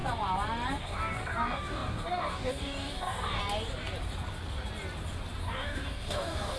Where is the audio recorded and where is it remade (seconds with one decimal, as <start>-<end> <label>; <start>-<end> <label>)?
0.0-0.8 recorded; 0.8-3.4 remade; 3.4-5.4 recorded; 5.4-6.6 remade